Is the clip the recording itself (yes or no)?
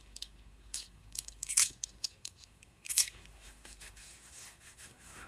no